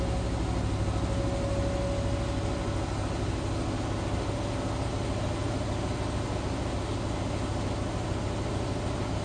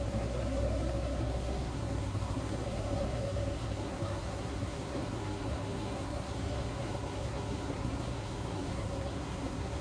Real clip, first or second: first